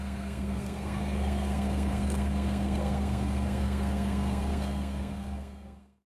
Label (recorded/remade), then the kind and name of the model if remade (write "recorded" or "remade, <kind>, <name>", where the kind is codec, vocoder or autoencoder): remade, codec, SNAC